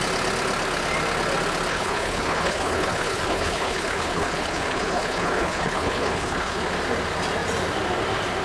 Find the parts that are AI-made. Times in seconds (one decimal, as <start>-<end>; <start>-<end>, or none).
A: 1.7-6.7